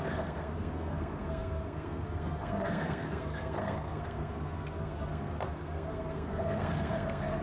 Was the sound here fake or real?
fake